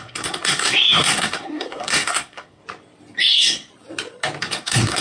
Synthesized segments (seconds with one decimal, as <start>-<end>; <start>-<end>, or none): 0.0-2.6; 3.2-3.7; 4.4-5.0